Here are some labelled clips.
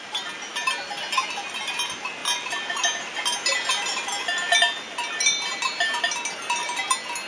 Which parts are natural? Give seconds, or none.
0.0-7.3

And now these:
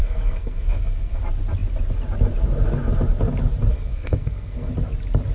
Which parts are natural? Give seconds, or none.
1.2-3.7; 4.7-5.3